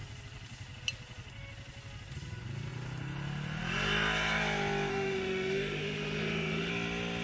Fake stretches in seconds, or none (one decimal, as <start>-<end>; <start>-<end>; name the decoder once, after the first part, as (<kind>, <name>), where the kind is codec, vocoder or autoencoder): 4.9-6.7 (autoencoder, DAC-VAE)